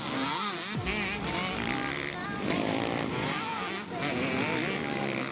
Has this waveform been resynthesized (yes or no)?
no